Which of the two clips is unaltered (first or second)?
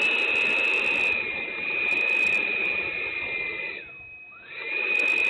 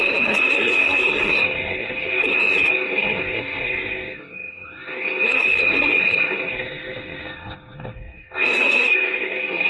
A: first